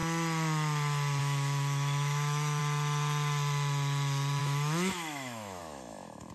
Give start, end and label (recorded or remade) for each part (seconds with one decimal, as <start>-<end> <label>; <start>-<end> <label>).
0.0-1.2 recorded; 1.2-2.6 remade; 2.6-4.4 recorded; 4.4-6.3 remade